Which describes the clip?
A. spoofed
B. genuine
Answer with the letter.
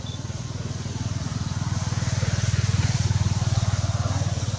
A